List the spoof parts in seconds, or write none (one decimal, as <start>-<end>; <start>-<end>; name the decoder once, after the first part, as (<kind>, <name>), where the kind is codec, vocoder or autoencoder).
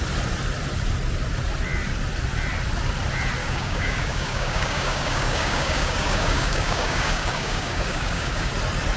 3.4-8.5 (codec, DAC)